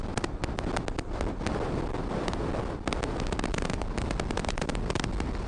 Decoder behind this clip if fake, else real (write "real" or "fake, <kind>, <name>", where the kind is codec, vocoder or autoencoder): real